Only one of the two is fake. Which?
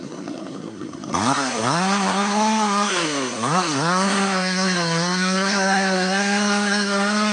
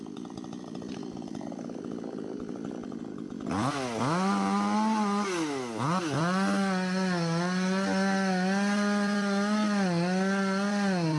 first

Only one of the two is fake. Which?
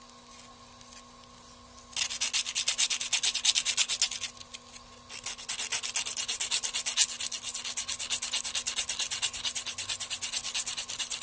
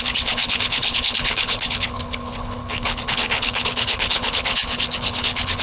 second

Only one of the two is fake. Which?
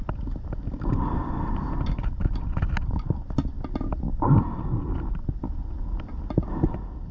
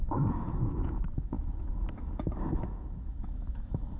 second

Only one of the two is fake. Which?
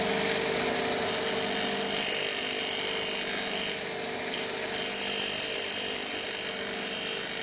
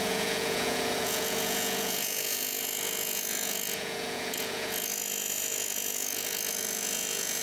second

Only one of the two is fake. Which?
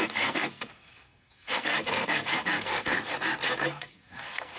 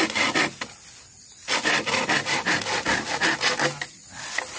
first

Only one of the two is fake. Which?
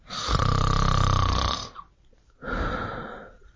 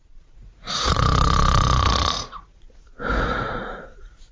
second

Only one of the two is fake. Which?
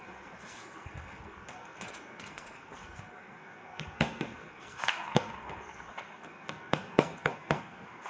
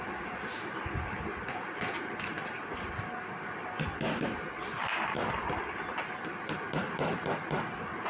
first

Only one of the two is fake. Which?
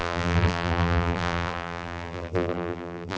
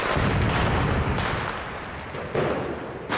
first